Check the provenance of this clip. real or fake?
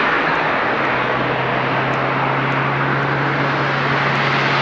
real